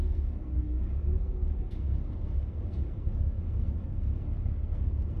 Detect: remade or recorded remade